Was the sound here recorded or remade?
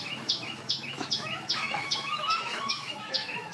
remade